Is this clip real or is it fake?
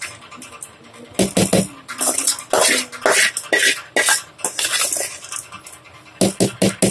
real